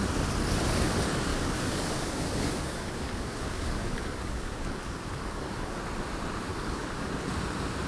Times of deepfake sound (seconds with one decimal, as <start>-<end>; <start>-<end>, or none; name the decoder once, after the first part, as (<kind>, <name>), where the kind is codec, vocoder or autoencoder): 1.3-5.8 (codec, DAC); 6.5-7.1